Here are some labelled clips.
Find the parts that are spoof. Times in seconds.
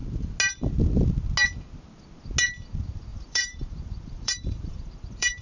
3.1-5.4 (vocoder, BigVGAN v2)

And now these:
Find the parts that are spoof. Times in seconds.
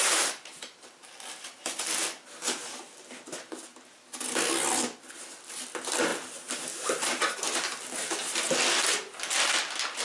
none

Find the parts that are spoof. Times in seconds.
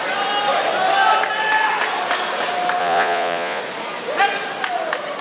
2.8-3.6 (vocoder, Vocos)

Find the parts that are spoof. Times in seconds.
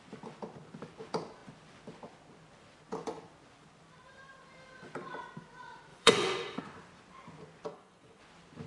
5.9-6.6 (vocoder, Vocos); 7.7-8.2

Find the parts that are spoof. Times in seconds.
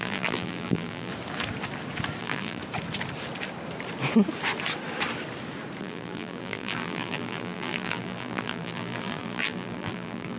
0.0-1.1 (vocoder, BigVGAN v2); 2.2-2.6; 5.8-10.4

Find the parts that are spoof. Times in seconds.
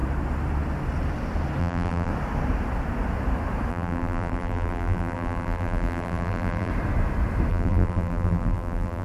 1.6-2.1 (vocoder, BigVGAN v2); 3.7-6.7; 7.5-9.0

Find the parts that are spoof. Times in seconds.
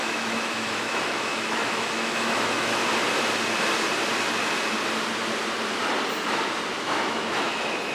0.0-2.8 (autoencoder, DAC-VAE); 6.8-7.9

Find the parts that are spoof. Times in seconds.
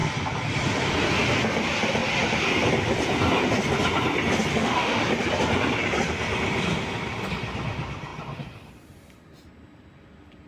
4.5-5.0 (autoencoder, DAC-VAE)